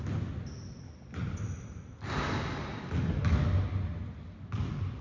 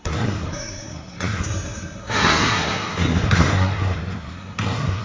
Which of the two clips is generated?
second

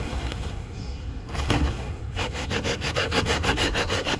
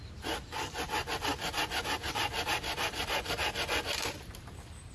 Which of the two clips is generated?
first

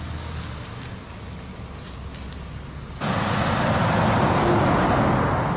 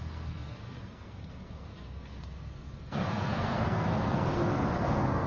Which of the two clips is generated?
second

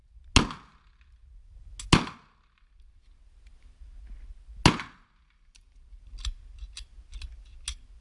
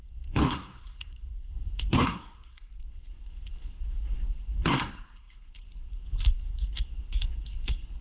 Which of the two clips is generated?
second